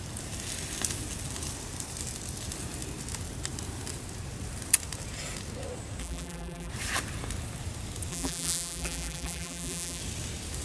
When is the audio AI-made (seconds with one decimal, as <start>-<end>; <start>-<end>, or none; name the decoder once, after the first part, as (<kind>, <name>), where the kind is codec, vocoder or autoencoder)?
6.0-6.7 (vocoder, BigVGAN v2); 8.1-10.0